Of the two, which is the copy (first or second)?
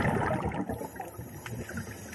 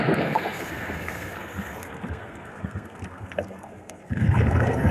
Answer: second